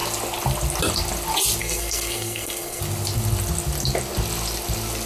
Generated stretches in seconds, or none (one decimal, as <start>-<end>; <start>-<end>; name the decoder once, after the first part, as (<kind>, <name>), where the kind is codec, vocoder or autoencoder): 1.6-2.8 (codec, SNAC)